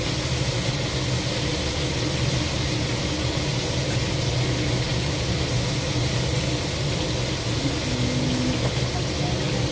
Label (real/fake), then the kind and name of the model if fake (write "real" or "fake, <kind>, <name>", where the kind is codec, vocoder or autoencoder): real